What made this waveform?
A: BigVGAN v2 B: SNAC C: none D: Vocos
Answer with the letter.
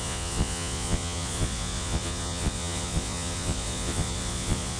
D